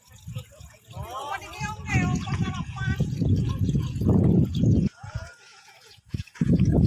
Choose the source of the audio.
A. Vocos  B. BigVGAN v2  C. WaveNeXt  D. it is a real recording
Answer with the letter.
A